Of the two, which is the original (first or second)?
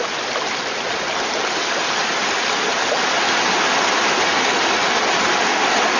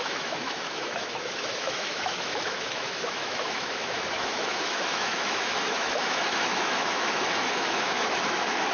first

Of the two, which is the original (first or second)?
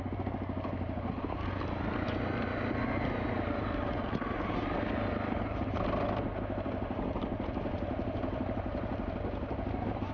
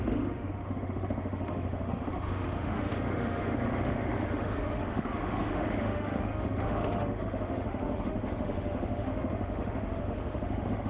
first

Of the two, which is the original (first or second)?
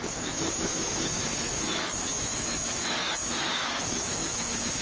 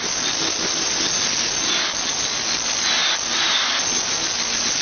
second